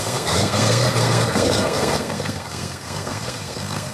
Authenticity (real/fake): fake